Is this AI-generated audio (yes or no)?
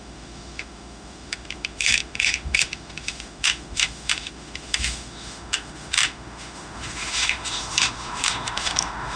yes